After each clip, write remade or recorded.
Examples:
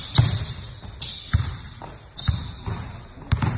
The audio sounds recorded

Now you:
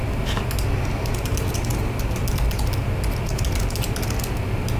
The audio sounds recorded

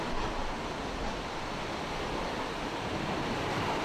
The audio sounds recorded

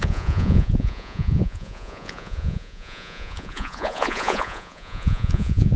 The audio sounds remade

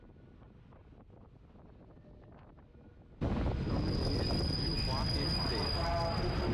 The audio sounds recorded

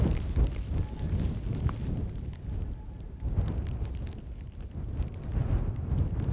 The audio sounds recorded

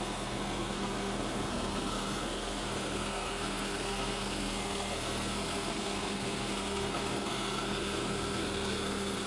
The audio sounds remade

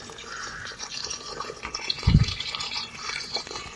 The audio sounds remade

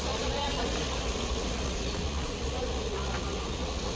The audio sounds remade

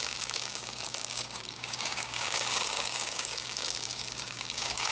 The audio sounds remade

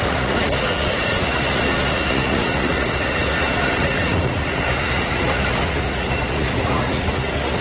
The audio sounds remade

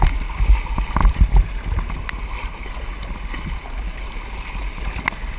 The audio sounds recorded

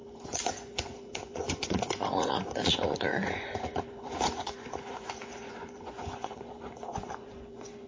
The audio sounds remade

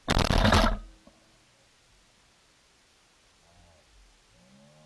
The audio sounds recorded